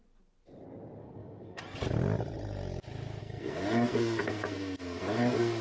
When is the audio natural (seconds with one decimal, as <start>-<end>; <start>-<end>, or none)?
0.0-1.0; 1.6-3.2